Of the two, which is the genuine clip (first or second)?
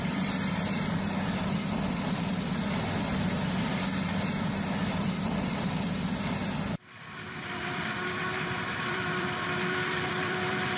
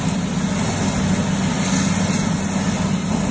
second